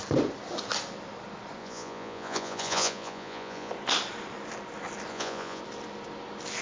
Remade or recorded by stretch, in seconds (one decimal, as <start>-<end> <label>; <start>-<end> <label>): 0.0-1.6 recorded; 1.6-3.7 remade; 3.7-5.1 recorded; 5.1-5.6 remade; 5.6-6.6 recorded